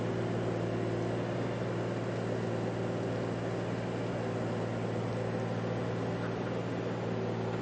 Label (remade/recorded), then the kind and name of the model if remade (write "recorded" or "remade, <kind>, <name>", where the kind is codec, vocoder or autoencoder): recorded